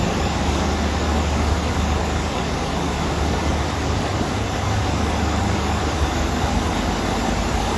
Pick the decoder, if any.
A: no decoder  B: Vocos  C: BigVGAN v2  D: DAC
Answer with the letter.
D